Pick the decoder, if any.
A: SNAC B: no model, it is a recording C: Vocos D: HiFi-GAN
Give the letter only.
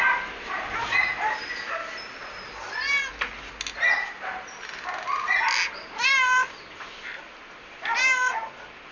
B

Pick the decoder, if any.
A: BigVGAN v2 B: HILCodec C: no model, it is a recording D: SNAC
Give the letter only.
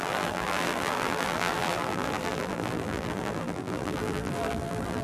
A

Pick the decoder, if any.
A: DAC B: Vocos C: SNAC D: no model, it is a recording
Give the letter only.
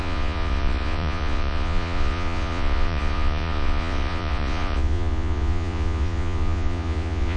B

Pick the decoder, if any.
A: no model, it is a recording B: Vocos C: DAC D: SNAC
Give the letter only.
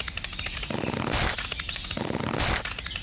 A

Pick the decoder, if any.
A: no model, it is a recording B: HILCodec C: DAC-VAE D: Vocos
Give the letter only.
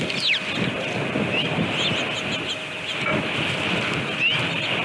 A